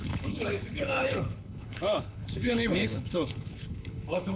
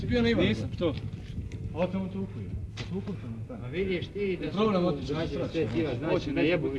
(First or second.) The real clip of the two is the second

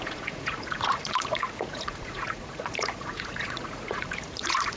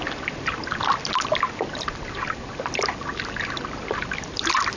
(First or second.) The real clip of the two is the second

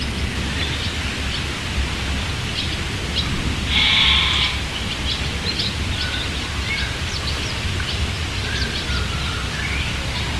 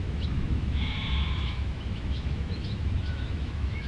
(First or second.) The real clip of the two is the first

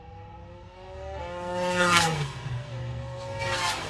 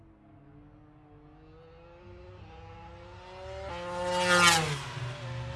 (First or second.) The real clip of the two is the second